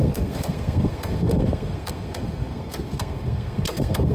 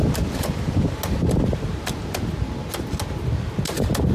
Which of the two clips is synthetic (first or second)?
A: first